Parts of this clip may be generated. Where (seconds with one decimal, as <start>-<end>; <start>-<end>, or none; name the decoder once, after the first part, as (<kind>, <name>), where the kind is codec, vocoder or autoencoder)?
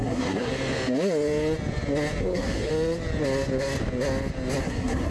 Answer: 0.0-0.5 (codec, SNAC); 2.2-2.7; 4.6-5.1